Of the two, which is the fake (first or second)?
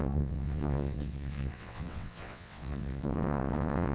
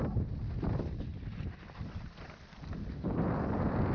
first